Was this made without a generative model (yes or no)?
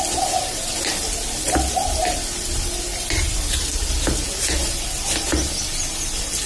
yes